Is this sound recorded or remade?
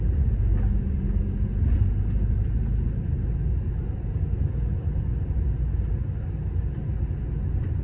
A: recorded